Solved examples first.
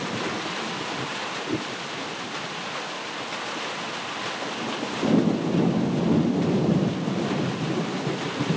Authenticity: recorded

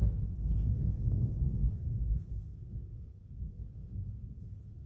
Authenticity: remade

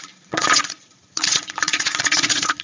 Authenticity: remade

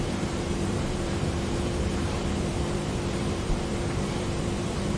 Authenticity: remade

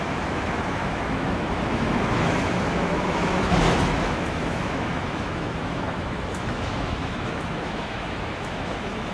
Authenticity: remade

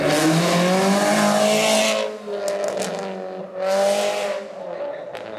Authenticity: recorded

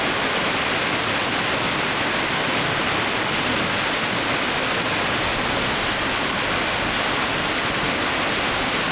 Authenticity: recorded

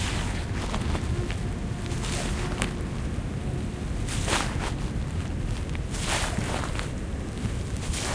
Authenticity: recorded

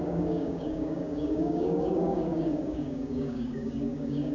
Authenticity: remade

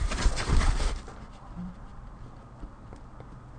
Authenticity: recorded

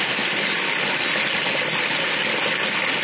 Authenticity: recorded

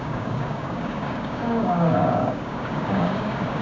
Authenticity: remade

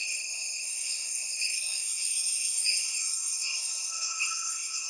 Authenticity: remade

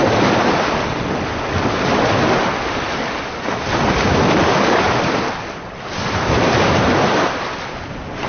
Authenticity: recorded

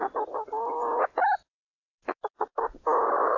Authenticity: recorded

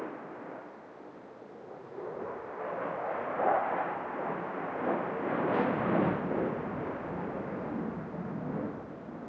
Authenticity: recorded